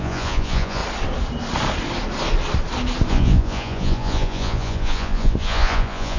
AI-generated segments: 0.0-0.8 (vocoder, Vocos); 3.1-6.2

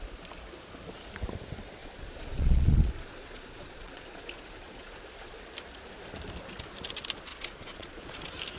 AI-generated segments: 1.8-5.4 (vocoder, Vocos); 7.3-8.0

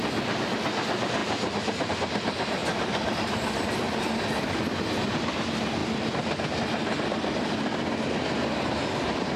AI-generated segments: 1.2-1.9 (vocoder, BigVGAN v2)